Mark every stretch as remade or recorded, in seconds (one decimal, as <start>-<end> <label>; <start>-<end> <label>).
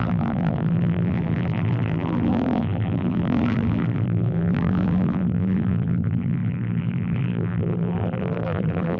0.0-9.0 remade